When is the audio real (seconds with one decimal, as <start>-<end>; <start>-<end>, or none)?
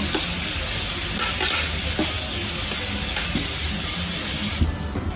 0.0-5.2